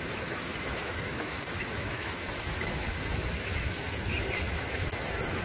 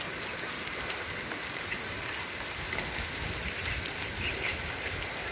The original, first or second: second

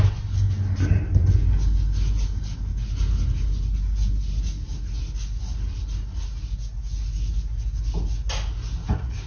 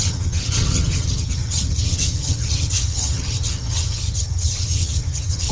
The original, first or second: first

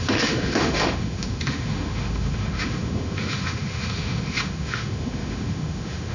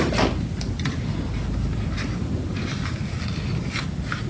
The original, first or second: second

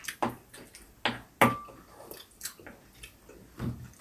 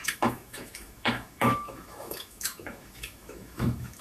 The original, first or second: first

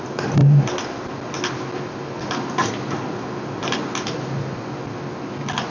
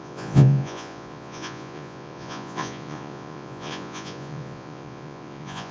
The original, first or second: first